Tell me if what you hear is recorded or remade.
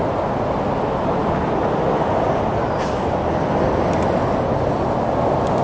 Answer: recorded